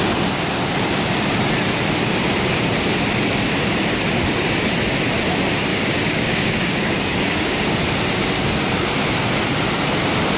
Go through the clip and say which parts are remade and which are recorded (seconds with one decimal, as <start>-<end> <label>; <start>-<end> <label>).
0.0-5.7 recorded; 5.7-7.7 remade; 7.7-10.4 recorded